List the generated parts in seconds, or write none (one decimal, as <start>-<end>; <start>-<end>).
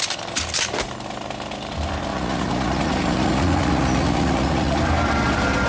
2.1-4.8